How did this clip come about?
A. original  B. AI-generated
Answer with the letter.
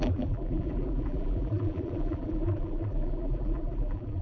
B